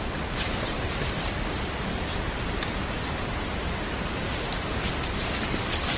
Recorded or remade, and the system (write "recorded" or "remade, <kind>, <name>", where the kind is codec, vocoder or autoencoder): remade, vocoder, BigVGAN v2